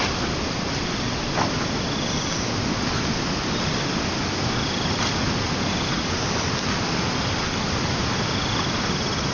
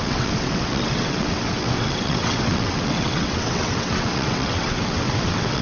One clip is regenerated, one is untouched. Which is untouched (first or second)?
first